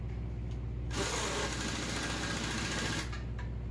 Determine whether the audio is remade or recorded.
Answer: recorded